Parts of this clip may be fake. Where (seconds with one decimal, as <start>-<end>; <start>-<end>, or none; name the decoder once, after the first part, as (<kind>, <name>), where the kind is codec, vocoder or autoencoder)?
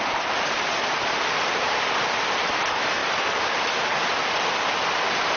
none